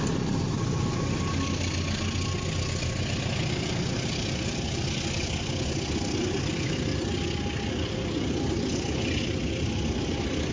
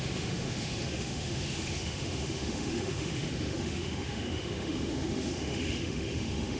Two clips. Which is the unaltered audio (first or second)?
first